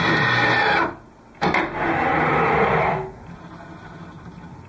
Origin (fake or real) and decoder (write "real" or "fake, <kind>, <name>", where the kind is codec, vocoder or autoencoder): real